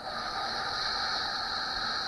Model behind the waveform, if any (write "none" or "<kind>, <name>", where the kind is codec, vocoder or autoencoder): none